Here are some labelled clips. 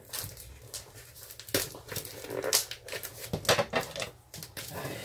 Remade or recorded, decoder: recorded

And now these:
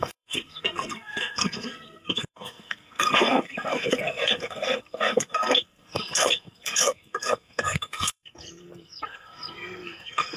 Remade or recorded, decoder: remade, codec, SNAC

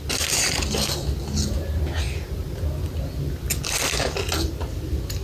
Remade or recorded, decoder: recorded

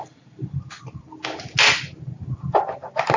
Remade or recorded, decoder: recorded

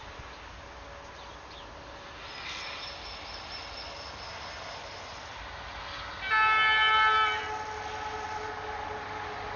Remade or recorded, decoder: recorded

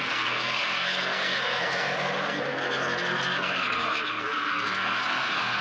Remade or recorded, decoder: remade, codec, SNAC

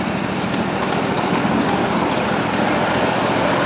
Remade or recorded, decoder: recorded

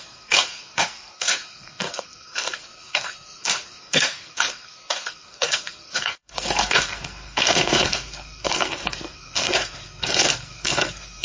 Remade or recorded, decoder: remade, codec, SNAC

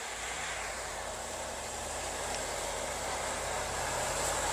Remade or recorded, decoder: remade, vocoder, BigVGAN v2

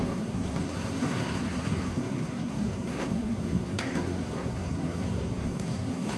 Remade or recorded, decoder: remade, codec, SNAC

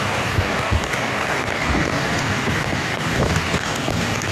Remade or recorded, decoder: remade, codec, DAC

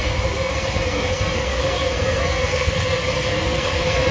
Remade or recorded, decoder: remade, codec, SNAC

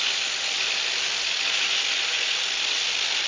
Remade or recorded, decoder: recorded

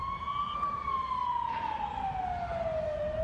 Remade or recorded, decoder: recorded